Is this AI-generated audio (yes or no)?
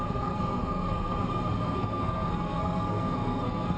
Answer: yes